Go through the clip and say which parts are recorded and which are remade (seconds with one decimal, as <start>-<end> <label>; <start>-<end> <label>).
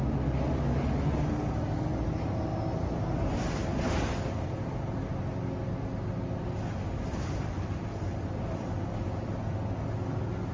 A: 0.0-10.5 recorded